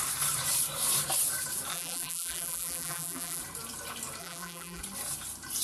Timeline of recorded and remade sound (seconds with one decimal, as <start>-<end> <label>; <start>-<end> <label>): 0.0-1.7 recorded; 1.7-3.4 remade; 3.4-4.2 recorded; 4.2-4.8 remade; 4.8-5.6 recorded